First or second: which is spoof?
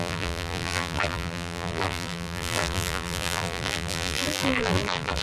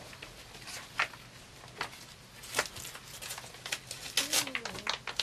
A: first